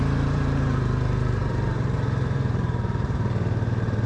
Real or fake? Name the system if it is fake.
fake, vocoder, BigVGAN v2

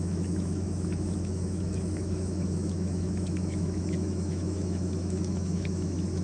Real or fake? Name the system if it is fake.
fake, autoencoder, DAC-VAE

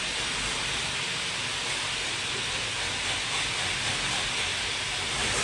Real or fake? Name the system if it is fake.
real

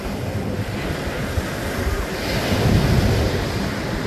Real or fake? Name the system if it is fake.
real